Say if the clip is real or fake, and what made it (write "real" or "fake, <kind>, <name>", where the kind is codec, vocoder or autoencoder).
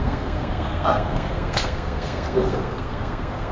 fake, codec, SNAC